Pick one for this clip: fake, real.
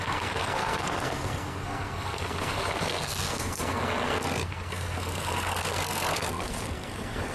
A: fake